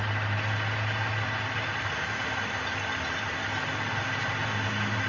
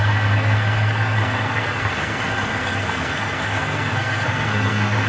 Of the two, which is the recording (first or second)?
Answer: first